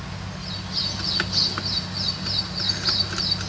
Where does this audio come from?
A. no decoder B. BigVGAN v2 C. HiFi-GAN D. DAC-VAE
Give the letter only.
A